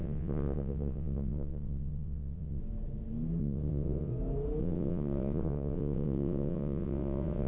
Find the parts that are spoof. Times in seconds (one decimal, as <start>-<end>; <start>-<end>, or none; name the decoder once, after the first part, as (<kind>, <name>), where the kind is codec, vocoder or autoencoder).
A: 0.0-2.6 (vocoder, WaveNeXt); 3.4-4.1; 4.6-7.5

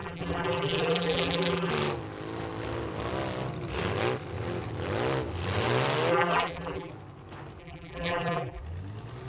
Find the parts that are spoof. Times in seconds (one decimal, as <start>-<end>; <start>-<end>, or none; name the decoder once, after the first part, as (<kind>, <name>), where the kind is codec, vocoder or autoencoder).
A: 0.0-1.7 (vocoder, BigVGAN v2); 6.1-6.9; 7.6-8.6

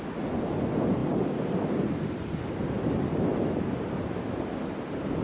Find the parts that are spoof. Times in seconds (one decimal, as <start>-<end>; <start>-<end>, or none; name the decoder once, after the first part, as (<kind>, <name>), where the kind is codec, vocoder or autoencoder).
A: none

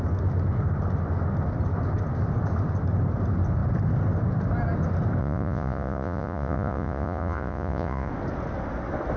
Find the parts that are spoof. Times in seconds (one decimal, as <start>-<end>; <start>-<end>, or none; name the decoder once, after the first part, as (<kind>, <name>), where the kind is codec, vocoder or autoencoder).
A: 5.2-8.1 (vocoder, Vocos)